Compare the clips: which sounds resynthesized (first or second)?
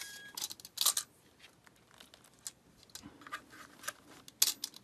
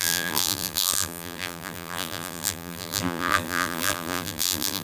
second